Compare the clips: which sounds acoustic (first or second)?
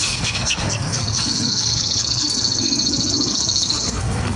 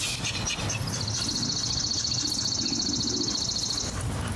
second